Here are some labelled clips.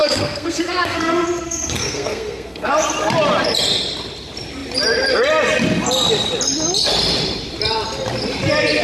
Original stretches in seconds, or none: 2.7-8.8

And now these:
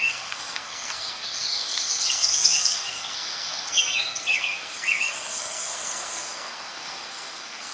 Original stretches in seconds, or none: none

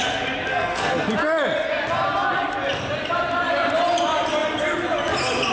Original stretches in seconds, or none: 0.0-0.5; 1.1-5.5